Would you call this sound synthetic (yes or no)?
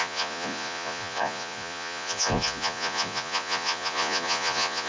yes